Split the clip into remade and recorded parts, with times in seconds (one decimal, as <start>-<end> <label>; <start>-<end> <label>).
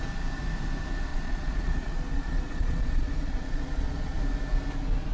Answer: 0.0-1.1 recorded; 1.1-4.2 remade; 4.2-5.1 recorded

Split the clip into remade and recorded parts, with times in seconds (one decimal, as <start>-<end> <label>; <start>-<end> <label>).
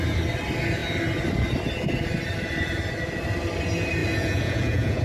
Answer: 0.0-4.0 recorded; 4.0-5.0 remade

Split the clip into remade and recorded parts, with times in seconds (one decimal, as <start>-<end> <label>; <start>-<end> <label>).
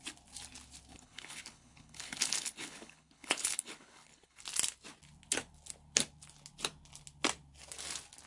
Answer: 0.0-0.9 recorded; 0.9-4.4 remade; 4.4-8.3 recorded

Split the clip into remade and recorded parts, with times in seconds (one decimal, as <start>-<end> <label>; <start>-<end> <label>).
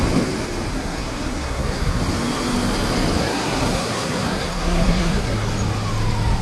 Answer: 0.0-0.7 recorded; 0.7-2.0 remade; 2.0-3.2 recorded; 3.2-5.5 remade; 5.5-6.4 recorded